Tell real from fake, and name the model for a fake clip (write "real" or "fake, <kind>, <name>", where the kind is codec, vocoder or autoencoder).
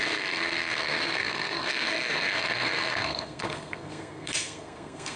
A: fake, codec, SNAC